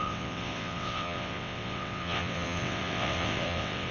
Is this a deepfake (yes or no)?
yes